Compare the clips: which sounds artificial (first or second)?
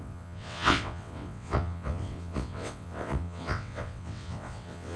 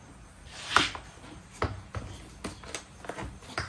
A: first